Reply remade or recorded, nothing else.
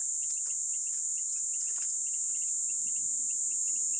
recorded